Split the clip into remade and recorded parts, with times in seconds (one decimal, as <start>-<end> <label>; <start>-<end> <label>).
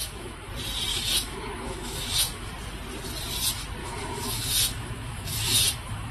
0.0-0.5 remade; 0.5-0.9 recorded; 0.9-2.5 remade; 2.5-3.8 recorded; 3.8-6.1 remade